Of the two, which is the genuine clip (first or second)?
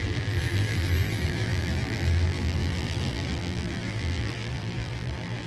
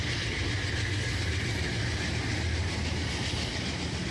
second